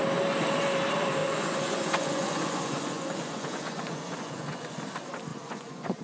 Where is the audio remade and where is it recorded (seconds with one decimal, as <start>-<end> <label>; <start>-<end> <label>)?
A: 0.0-1.2 recorded; 1.2-4.8 remade; 4.8-5.3 recorded; 5.3-6.0 remade